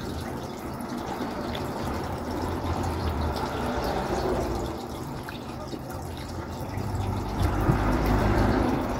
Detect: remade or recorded remade